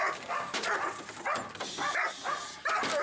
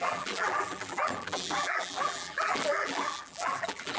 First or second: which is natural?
first